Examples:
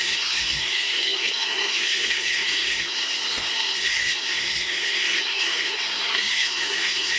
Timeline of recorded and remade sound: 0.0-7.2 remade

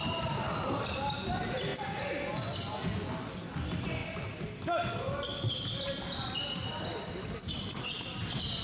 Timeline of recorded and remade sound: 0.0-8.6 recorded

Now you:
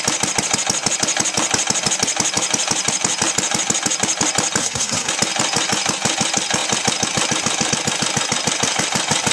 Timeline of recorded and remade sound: 0.0-4.6 recorded; 4.6-5.1 remade; 5.1-9.3 recorded

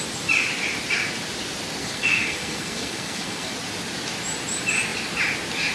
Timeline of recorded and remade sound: 0.0-1.8 recorded; 1.8-3.5 remade; 3.5-5.7 recorded